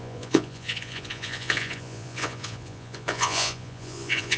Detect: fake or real fake